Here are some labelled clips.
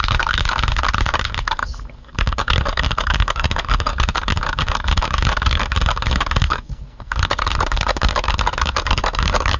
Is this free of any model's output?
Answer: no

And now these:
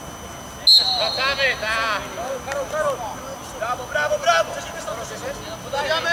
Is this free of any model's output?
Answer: yes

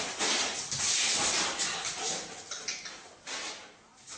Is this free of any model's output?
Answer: yes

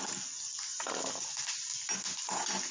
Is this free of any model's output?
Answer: yes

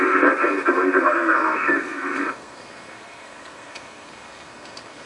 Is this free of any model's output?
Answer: no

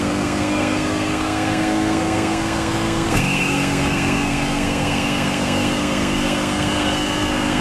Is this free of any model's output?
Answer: no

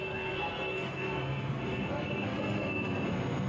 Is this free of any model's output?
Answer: no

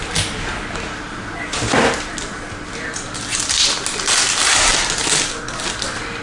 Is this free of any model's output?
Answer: yes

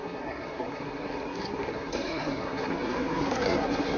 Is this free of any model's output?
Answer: no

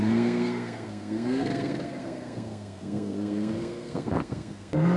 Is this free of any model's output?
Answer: no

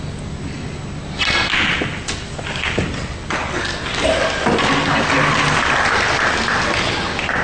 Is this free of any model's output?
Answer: yes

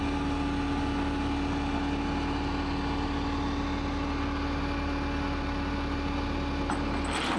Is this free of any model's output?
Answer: yes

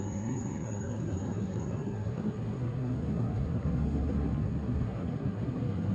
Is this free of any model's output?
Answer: no